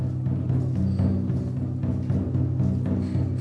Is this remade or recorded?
recorded